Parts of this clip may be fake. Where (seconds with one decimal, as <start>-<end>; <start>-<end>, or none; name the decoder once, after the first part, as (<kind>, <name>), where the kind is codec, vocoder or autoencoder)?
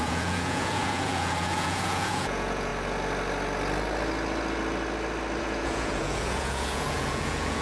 0.0-2.7 (vocoder, Vocos); 5.4-7.6